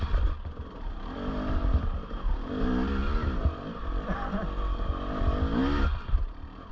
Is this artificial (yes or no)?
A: no